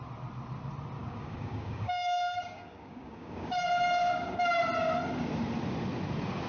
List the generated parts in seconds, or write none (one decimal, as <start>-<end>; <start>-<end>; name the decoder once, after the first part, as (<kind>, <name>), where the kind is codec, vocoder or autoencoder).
1.0-4.6 (codec, DAC)